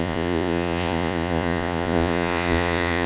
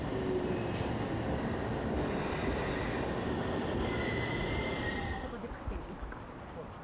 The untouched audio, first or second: second